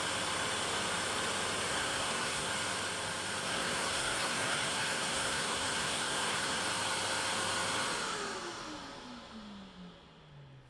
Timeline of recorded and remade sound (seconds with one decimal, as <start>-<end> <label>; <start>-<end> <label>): 0.0-1.7 recorded; 1.7-2.5 remade; 2.5-3.4 recorded; 3.4-6.6 remade; 6.6-10.7 recorded